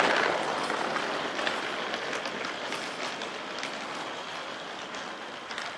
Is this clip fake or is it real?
real